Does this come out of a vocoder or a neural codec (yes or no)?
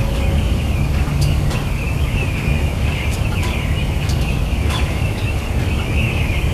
yes